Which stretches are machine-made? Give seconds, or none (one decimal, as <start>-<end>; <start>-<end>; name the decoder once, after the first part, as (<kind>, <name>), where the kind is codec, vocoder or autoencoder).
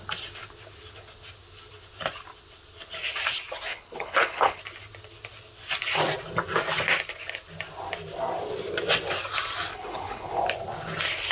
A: 3.7-4.6 (codec, HILCodec); 9.7-10.4